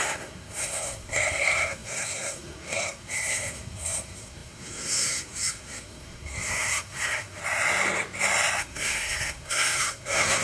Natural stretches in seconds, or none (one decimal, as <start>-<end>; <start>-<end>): 7.4-8.6